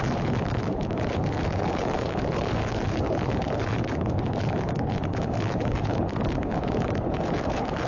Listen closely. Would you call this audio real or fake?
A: fake